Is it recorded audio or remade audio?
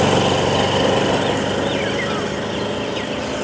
recorded